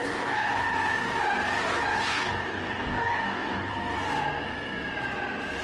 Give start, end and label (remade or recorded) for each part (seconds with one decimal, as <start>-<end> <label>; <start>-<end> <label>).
0.0-0.6 remade; 0.6-2.1 recorded; 2.1-3.7 remade; 3.7-5.6 recorded